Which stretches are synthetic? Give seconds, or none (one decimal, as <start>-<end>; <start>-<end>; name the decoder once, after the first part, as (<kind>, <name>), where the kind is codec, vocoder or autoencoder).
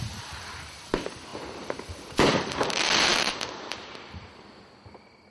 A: 0.0-5.3 (vocoder, BigVGAN v2)